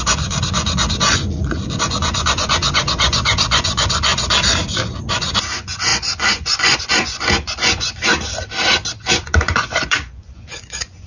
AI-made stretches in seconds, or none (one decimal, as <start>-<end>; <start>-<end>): 0.0-4.1; 5.1-8.1; 8.9-11.1